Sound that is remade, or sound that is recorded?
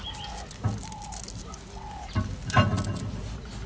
recorded